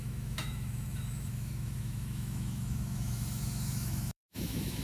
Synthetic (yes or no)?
yes